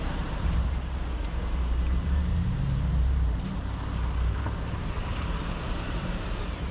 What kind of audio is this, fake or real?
fake